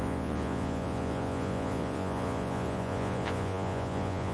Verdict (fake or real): fake